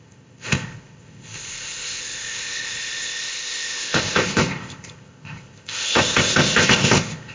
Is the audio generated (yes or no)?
yes